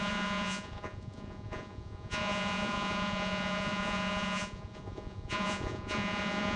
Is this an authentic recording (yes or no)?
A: no